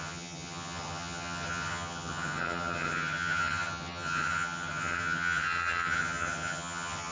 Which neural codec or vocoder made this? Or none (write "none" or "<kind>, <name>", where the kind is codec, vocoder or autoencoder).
vocoder, HiFi-GAN